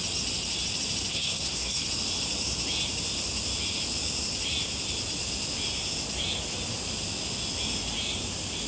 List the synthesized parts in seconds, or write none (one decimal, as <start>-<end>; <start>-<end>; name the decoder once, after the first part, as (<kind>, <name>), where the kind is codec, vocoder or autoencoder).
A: 1.1-1.8 (codec, SNAC)